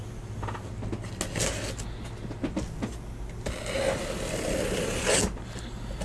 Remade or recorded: recorded